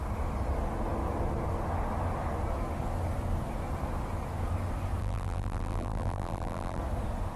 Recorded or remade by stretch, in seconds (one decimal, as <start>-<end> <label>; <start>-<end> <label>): 0.0-5.0 recorded; 5.0-6.8 remade; 6.8-7.4 recorded